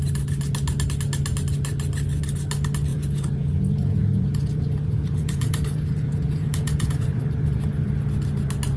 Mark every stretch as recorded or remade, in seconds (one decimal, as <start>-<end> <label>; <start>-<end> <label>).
0.0-2.9 recorded; 2.9-7.2 remade; 7.2-8.8 recorded